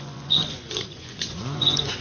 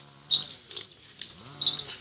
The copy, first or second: first